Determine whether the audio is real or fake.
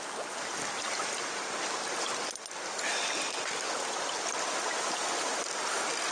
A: real